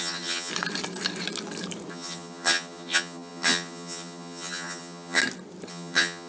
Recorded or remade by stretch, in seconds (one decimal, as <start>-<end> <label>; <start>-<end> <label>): 0.0-0.5 remade; 0.5-1.9 recorded; 1.9-5.2 remade; 5.2-5.7 recorded; 5.7-6.3 remade